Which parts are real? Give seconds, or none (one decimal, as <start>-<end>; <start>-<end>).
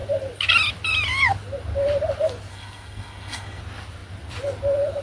0.0-2.5; 3.6-5.0